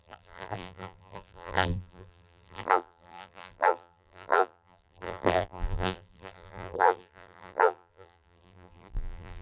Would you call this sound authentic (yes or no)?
no